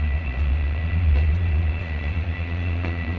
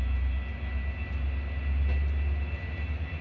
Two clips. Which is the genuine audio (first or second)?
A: second